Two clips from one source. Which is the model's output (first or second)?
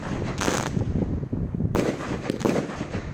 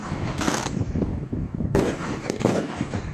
second